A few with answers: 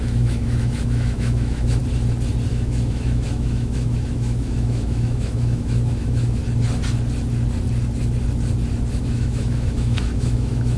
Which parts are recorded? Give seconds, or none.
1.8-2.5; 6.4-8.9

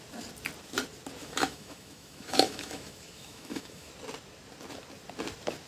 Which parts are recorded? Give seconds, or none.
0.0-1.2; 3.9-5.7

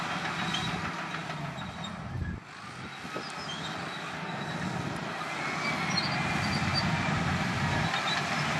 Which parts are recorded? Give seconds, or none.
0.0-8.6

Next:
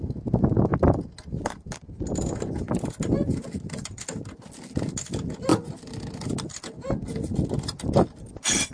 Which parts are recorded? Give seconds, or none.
0.0-8.7

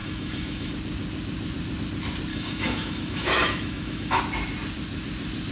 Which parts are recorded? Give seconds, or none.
0.7-2.3; 4.2-5.5

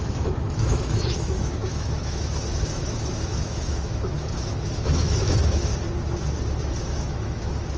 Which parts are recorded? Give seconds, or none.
5.7-7.0